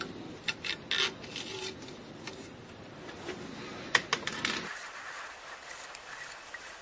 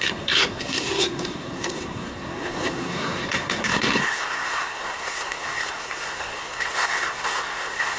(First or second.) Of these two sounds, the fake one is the second